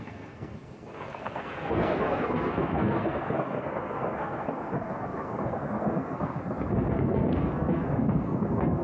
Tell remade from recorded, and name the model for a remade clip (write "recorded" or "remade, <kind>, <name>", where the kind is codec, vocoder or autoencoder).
remade, codec, SNAC